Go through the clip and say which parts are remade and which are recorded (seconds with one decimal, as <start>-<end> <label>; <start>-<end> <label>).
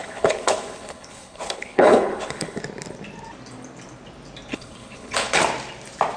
0.0-2.6 remade; 2.6-4.5 recorded; 4.5-5.4 remade; 5.4-6.2 recorded